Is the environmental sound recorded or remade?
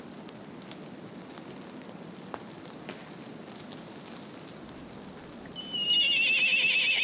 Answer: recorded